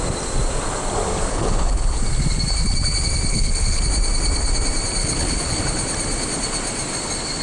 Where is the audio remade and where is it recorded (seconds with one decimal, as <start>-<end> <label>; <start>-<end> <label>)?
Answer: 0.0-1.3 recorded; 1.3-2.0 remade; 2.0-3.3 recorded; 3.3-3.8 remade; 3.8-5.0 recorded; 5.0-5.6 remade; 5.6-7.4 recorded